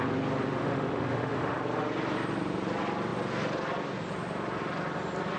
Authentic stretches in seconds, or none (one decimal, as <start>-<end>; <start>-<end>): 0.0-0.6; 1.6-5.4